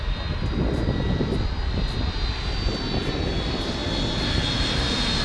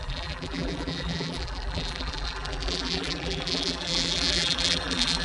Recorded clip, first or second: first